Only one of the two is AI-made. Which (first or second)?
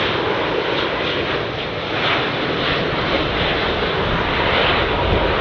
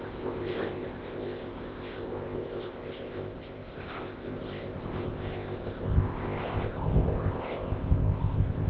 second